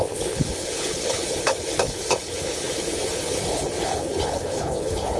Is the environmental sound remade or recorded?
remade